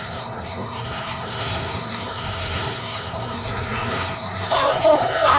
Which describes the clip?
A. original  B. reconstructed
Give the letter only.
B